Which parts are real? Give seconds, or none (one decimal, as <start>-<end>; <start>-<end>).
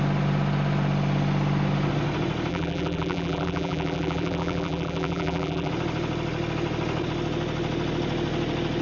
0.0-2.5; 5.7-8.8